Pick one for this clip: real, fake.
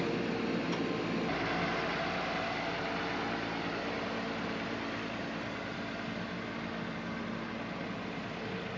real